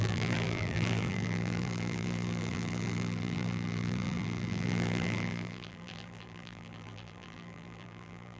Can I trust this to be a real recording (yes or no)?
no